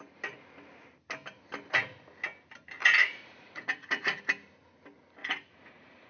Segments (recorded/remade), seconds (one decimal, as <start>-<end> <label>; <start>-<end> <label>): 0.0-2.8 recorded; 2.8-4.2 remade; 4.2-5.2 recorded; 5.2-6.1 remade